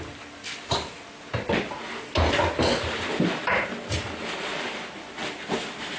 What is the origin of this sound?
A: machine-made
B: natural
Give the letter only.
B